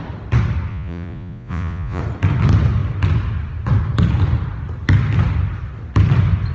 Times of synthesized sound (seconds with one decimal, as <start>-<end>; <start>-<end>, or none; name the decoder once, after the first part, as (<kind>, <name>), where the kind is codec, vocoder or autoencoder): 0.7-2.0 (vocoder, Vocos)